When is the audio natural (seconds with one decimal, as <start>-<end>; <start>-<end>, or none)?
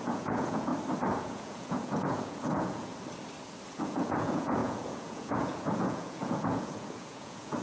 0.7-1.2; 2.9-3.7